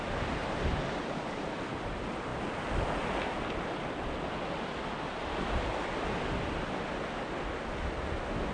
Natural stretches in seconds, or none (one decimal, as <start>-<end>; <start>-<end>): 0.0-8.5